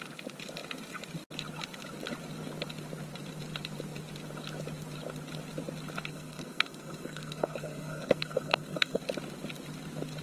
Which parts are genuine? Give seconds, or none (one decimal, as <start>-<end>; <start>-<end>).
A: 0.0-6.1; 9.0-10.2